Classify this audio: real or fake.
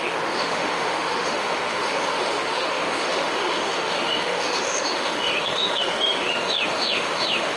fake